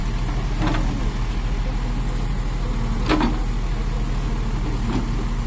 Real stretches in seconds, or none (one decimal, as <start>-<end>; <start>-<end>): 0.0-5.5